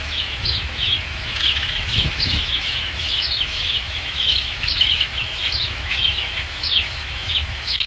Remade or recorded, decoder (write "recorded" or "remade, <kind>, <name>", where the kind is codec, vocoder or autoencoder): remade, autoencoder, DAC-VAE